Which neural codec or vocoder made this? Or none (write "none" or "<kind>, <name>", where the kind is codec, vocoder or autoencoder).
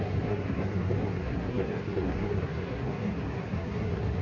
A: codec, SNAC